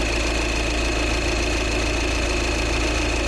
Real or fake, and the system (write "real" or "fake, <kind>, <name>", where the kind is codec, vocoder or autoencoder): real